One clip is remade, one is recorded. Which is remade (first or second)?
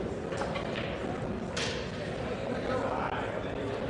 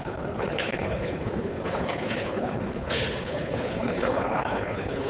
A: second